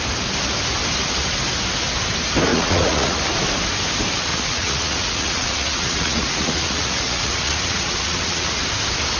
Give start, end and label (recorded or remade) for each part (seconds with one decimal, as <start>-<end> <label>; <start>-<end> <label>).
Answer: 0.0-2.5 recorded; 2.5-3.2 remade; 3.2-4.3 recorded; 4.3-8.6 remade; 8.6-9.2 recorded